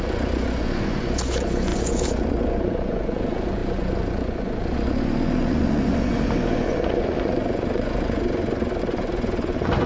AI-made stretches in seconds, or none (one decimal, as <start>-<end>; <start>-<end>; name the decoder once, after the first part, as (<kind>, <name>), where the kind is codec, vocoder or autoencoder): 0.0-9.9 (vocoder, Vocos)